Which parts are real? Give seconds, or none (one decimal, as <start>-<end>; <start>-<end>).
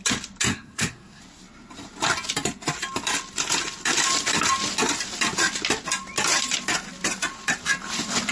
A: 0.0-0.5; 1.2-8.3